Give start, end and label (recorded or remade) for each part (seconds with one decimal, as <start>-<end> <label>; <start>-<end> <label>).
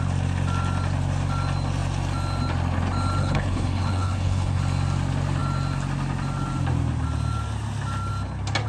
0.0-3.2 recorded; 3.2-4.6 remade; 4.6-8.7 recorded